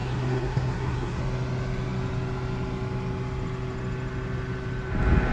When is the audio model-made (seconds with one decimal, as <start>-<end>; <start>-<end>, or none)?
0.0-1.2